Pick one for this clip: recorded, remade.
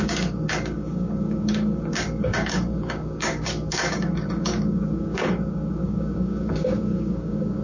remade